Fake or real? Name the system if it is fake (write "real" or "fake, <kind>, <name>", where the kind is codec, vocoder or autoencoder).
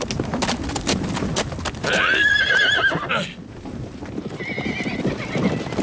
real